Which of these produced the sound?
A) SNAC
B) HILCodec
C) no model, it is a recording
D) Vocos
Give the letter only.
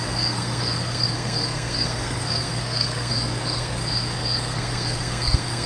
A